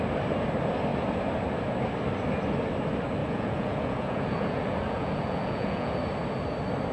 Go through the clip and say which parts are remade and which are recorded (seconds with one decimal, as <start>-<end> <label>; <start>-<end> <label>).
0.0-3.2 recorded; 3.2-6.0 remade; 6.0-6.9 recorded